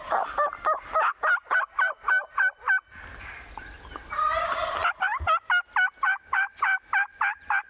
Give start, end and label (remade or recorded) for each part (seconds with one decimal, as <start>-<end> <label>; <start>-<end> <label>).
0.0-7.7 recorded